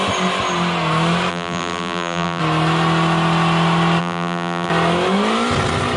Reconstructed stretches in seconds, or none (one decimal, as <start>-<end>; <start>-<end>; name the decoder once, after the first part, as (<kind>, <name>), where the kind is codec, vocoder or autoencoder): 1.3-2.4 (vocoder, BigVGAN v2); 4.0-4.7